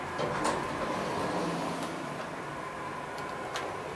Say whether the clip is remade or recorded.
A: recorded